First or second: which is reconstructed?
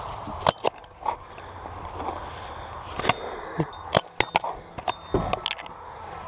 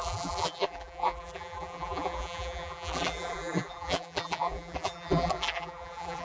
second